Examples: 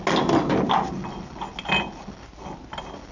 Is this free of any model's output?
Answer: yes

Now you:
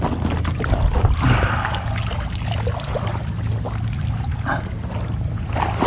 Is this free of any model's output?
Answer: yes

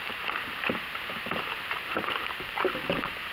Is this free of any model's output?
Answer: no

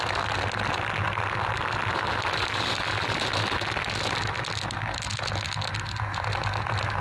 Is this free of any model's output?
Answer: yes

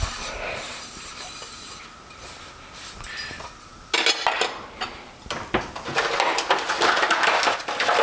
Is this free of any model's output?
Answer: yes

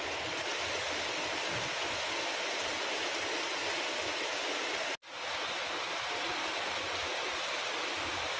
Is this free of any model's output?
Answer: yes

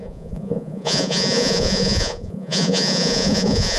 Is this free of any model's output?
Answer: no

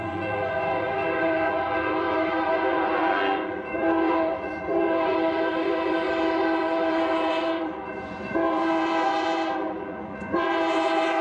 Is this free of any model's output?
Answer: no